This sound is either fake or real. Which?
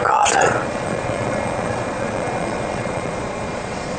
fake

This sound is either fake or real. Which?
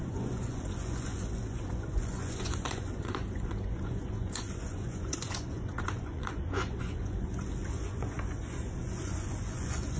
fake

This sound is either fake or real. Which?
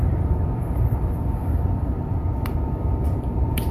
fake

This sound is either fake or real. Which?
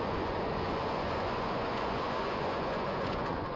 fake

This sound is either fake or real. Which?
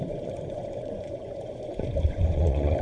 fake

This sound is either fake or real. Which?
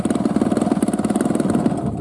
real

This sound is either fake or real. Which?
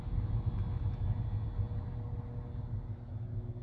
real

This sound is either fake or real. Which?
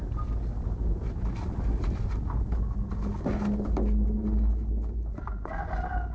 real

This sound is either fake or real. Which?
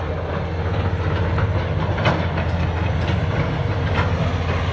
real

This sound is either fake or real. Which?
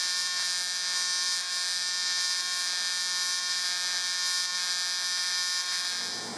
real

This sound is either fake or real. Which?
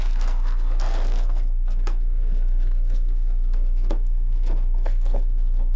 fake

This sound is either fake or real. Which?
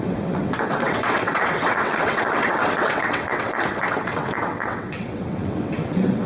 fake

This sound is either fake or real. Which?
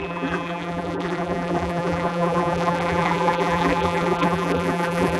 fake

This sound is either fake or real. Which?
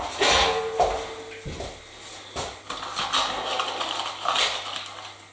real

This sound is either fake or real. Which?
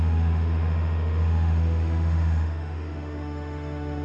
fake